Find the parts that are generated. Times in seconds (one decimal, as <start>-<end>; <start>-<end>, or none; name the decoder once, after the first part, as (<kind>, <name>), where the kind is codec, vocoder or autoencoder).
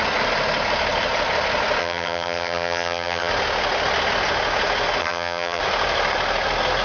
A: 1.8-3.3 (vocoder, HiFi-GAN); 5.0-5.6